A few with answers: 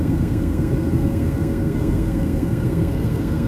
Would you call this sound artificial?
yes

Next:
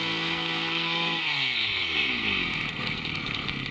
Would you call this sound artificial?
yes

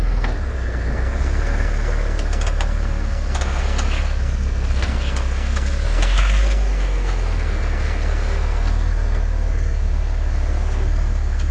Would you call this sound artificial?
yes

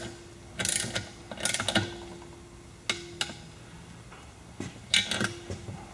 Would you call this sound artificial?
no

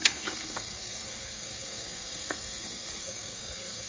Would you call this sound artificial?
yes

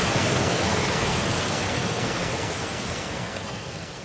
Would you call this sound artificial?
yes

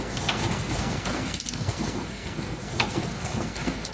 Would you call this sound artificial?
yes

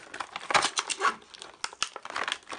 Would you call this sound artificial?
no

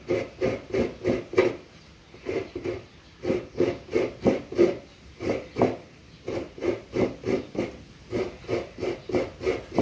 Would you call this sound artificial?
no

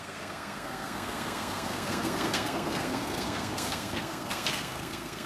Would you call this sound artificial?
yes